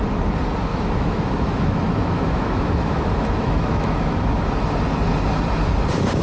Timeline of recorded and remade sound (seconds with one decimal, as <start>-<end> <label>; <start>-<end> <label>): 0.0-0.7 recorded; 0.7-4.4 remade; 4.4-6.2 recorded